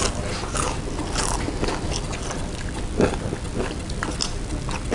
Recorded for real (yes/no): yes